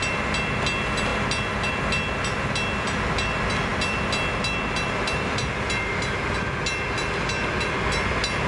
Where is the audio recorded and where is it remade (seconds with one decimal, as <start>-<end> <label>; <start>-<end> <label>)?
0.0-8.5 recorded